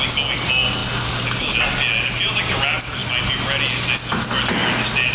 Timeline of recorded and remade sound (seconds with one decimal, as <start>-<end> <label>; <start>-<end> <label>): 0.0-5.1 recorded

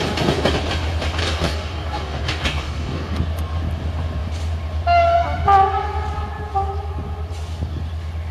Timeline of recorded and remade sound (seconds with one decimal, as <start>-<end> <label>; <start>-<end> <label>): 0.0-1.2 recorded; 1.2-3.2 remade; 3.2-8.3 recorded

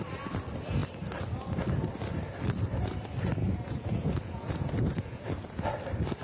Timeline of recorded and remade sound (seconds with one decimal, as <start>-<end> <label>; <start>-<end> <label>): 0.0-3.4 recorded; 3.4-5.6 remade; 5.6-6.2 recorded

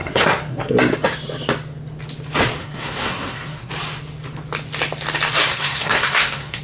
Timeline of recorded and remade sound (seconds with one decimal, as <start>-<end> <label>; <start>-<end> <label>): 0.0-0.7 remade; 0.7-2.6 recorded; 2.6-3.7 remade; 3.7-5.5 recorded; 5.5-6.6 remade

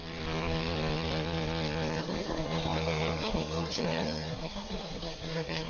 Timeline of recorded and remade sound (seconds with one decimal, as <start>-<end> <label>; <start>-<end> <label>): 0.0-2.0 recorded; 2.0-5.7 remade

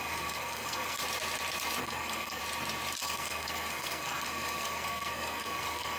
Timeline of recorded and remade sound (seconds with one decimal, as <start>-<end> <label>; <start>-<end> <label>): 0.0-1.0 remade; 1.0-1.8 recorded; 1.8-2.4 remade; 2.4-3.0 recorded; 3.0-6.0 remade

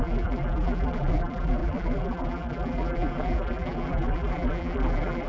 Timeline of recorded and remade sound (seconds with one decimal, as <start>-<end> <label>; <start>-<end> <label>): 0.0-5.3 remade

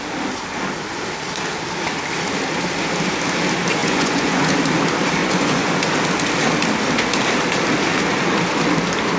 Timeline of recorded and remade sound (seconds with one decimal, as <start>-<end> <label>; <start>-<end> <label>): 0.0-3.8 recorded; 3.8-4.5 remade; 4.5-5.2 recorded; 5.2-5.8 remade; 5.8-9.2 recorded